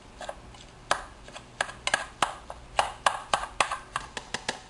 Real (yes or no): yes